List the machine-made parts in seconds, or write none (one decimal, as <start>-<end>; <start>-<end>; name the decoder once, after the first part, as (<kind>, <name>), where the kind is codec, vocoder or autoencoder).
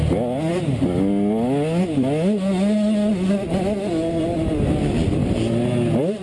none